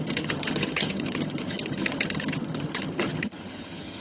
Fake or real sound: fake